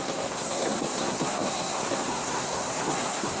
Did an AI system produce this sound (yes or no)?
yes